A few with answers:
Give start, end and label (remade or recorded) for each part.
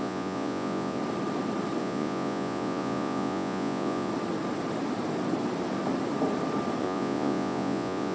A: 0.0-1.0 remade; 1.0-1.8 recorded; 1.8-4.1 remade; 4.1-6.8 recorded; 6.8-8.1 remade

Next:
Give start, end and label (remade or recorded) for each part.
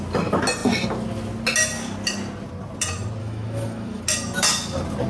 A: 0.0-3.2 recorded; 3.2-4.0 remade; 4.0-5.1 recorded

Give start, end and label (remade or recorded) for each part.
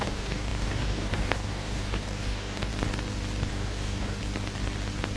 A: 0.0-2.7 remade; 2.7-3.5 recorded; 3.5-4.2 remade; 4.2-5.2 recorded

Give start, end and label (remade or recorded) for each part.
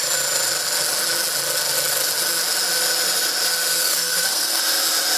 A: 0.0-3.8 recorded; 3.8-4.6 remade; 4.6-5.2 recorded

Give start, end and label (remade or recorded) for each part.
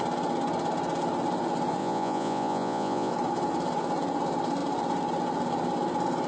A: 0.0-1.8 recorded; 1.8-3.1 remade; 3.1-6.3 recorded